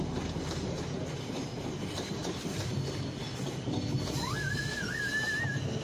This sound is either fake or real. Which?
real